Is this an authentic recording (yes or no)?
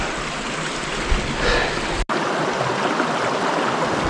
yes